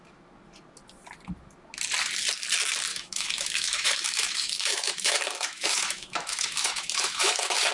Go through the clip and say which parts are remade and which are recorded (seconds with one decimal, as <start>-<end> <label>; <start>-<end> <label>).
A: 0.0-2.9 recorded; 2.9-7.7 remade